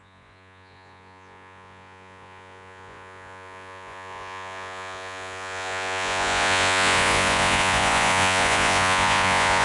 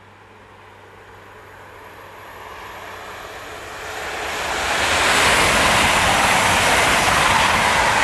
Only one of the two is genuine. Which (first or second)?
second